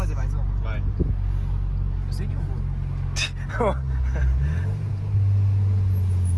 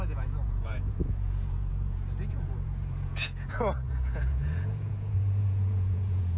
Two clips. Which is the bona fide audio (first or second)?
first